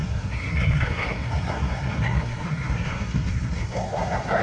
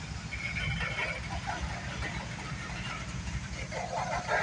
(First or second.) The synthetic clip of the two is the first